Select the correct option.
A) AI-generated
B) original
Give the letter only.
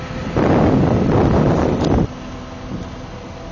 B